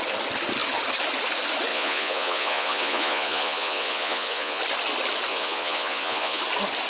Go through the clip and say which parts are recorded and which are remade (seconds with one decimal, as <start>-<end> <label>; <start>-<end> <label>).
0.0-1.7 recorded; 1.7-4.6 remade; 4.6-5.3 recorded; 5.3-6.4 remade; 6.4-6.9 recorded